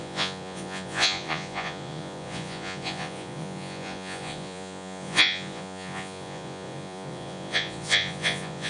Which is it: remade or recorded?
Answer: remade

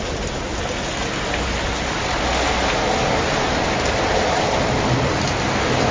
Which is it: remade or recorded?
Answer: recorded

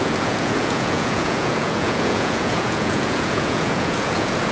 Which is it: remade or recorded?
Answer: remade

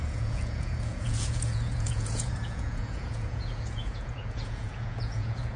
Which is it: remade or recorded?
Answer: remade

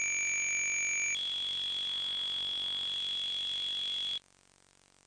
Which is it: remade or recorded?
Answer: recorded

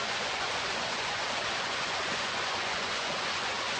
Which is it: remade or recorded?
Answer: remade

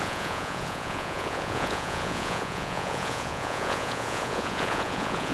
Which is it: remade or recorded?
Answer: remade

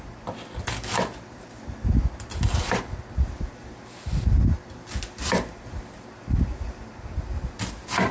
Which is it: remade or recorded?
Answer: recorded